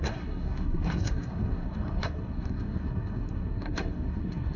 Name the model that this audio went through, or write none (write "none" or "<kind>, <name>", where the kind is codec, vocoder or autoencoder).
codec, SNAC